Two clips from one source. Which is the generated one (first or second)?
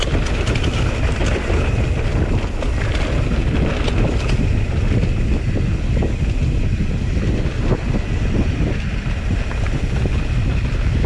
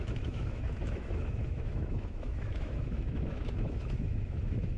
second